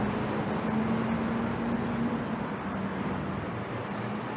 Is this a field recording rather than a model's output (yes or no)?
yes